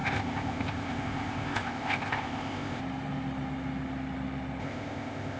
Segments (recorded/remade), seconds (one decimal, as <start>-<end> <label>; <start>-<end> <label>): 0.0-2.8 remade; 2.8-4.6 recorded; 4.6-5.4 remade